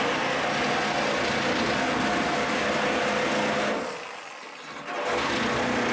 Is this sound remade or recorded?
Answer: recorded